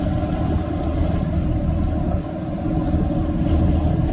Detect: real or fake real